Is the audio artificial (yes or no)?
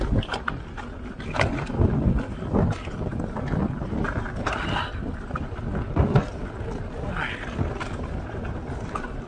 no